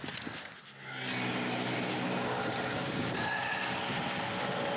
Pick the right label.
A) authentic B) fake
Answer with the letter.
A